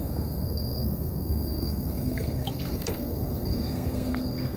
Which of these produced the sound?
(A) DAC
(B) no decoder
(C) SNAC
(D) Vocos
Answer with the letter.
C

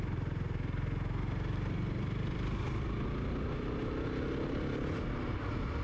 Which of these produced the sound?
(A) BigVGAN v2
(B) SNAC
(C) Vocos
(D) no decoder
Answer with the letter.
D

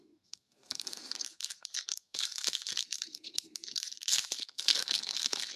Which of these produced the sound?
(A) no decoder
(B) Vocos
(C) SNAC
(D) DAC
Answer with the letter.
C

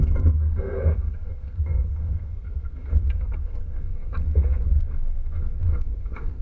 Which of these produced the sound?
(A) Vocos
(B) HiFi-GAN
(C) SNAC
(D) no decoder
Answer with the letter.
C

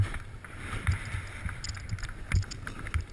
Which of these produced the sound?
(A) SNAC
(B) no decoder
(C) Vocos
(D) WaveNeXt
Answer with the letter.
B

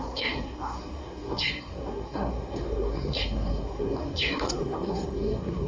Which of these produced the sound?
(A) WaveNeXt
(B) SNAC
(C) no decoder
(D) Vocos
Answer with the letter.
B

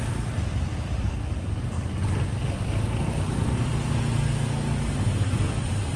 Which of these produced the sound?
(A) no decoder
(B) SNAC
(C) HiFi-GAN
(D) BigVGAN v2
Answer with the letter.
A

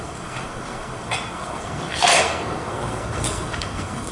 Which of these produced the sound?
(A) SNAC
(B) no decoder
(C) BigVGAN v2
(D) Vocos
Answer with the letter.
A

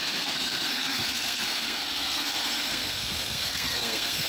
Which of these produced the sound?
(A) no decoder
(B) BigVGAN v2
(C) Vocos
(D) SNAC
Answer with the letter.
D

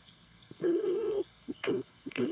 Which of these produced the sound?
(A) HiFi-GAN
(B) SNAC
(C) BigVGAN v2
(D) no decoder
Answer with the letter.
B